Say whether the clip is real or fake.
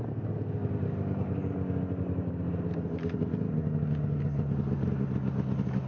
real